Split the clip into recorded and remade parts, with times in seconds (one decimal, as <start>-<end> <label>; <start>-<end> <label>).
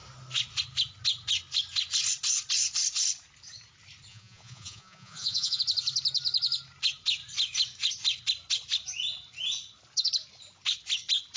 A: 0.0-4.1 recorded; 4.1-5.6 remade; 5.6-11.4 recorded